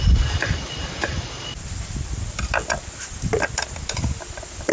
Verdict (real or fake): real